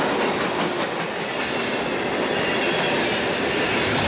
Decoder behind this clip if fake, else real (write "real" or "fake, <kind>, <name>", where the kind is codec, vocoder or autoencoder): real